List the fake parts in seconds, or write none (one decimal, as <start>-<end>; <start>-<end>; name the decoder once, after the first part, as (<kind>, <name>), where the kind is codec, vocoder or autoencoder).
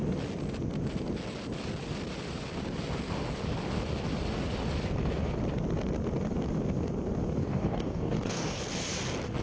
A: 7.4-8.6 (codec, DAC)